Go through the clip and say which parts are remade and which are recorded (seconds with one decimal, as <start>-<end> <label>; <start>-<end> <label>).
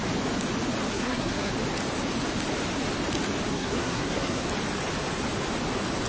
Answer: 0.0-0.9 recorded; 0.9-1.5 remade; 1.5-3.5 recorded; 3.5-4.5 remade; 4.5-6.1 recorded